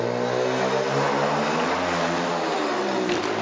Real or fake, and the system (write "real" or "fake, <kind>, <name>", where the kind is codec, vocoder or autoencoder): real